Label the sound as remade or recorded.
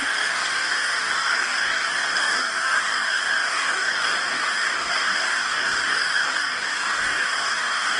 remade